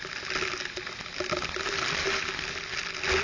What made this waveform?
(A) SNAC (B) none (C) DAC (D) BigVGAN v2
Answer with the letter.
B